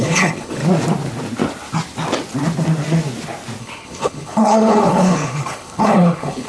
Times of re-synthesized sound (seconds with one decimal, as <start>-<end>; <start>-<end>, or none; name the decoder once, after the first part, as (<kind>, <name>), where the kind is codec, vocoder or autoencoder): 0.0-0.6 (codec, HILCodec); 3.6-6.5